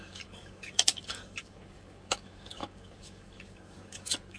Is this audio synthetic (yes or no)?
yes